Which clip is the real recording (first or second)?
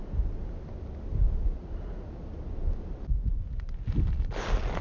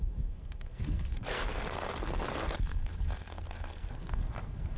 first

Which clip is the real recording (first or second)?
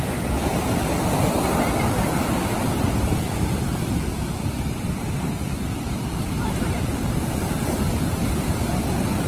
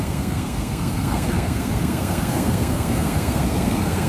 first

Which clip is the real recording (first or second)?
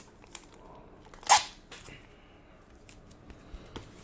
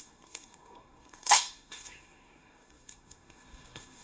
first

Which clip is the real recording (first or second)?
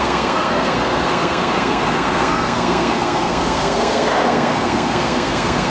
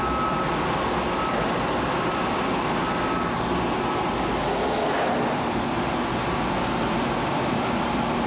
second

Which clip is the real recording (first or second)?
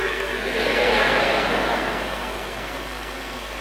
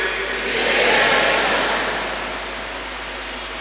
second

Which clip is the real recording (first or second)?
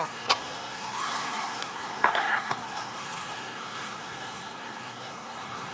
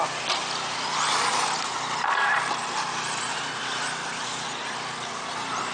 second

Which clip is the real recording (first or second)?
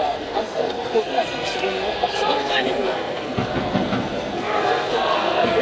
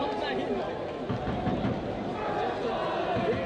second